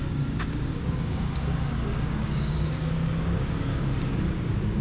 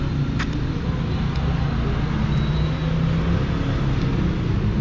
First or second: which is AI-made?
first